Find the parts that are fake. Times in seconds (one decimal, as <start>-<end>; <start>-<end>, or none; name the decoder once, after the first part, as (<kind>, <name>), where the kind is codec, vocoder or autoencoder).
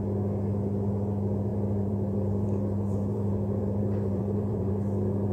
1.5-4.7 (vocoder, BigVGAN v2)